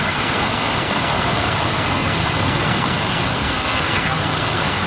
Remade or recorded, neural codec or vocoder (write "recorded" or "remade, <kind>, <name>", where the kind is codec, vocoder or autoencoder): remade, codec, SNAC